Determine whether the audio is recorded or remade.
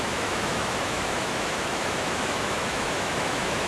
remade